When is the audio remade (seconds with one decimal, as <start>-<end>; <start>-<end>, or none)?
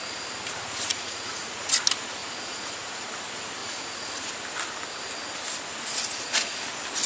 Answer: 0.9-1.7; 2.2-3.1; 3.6-4.3